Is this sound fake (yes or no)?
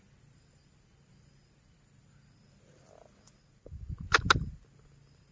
no